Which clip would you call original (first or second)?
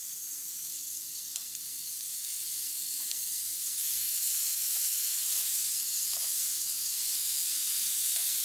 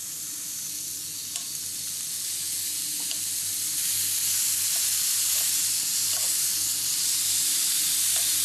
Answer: second